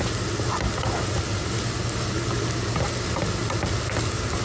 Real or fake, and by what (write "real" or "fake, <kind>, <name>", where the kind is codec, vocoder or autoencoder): real